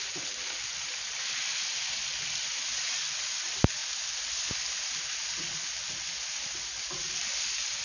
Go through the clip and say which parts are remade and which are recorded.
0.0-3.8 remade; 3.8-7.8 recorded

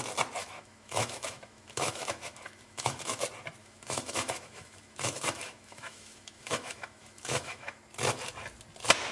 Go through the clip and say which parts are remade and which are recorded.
0.0-0.4 recorded; 0.4-3.2 remade; 3.2-3.6 recorded; 3.6-7.8 remade; 7.8-9.1 recorded

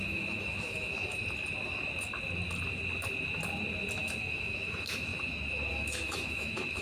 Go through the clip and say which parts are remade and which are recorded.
0.0-1.2 remade; 1.2-4.0 recorded; 4.0-5.1 remade; 5.1-5.7 recorded; 5.7-6.8 remade